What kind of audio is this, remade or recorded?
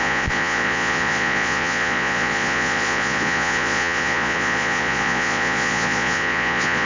remade